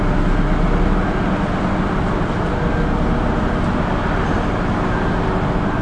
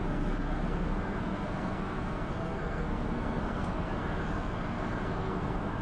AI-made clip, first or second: second